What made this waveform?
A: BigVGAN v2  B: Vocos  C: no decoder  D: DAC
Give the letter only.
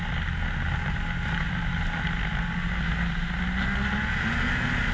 C